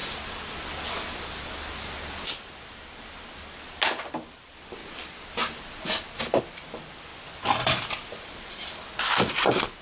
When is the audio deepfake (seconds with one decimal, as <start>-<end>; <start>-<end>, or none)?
4.8-6.4